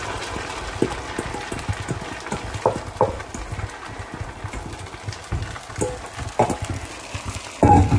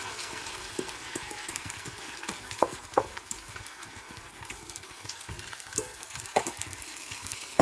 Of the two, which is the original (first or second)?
first